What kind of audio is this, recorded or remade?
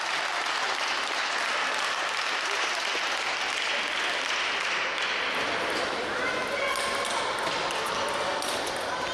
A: recorded